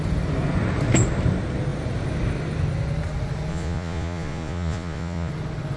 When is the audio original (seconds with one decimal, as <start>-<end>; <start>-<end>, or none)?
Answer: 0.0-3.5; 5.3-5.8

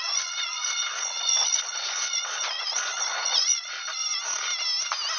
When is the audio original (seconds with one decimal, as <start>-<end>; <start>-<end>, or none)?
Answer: 4.0-5.2

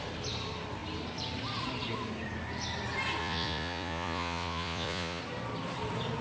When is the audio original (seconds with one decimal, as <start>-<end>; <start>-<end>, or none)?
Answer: 0.0-3.2; 5.2-6.2